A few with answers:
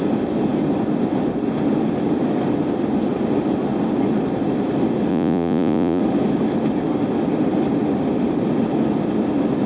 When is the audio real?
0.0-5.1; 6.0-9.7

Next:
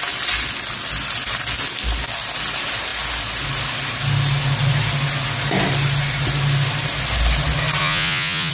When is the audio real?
0.0-7.8

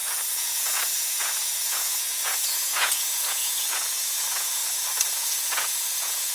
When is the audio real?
4.6-5.1

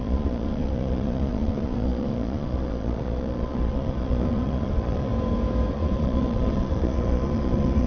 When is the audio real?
5.1-5.7

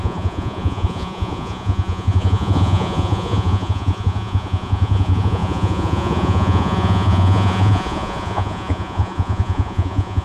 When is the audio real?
none

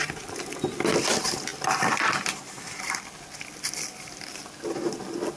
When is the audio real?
0.0-5.4

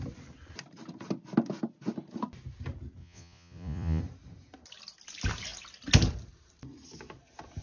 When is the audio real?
0.0-3.0; 4.0-7.6